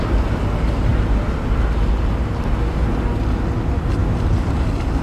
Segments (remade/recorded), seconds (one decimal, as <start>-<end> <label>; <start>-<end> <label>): 0.0-5.0 recorded